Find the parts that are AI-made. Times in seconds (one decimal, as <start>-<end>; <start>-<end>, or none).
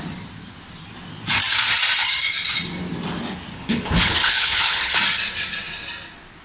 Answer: 3.5-4.9